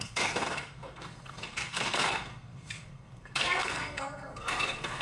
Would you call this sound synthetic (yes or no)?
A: yes